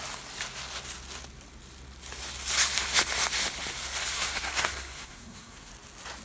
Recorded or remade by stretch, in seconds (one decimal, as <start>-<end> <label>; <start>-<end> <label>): 0.0-4.1 recorded; 4.1-5.7 remade; 5.7-6.2 recorded